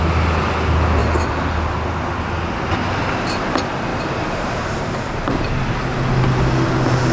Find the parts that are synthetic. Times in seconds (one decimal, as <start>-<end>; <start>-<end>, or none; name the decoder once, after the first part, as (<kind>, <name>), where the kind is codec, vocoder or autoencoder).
3.9-5.6 (vocoder, BigVGAN v2)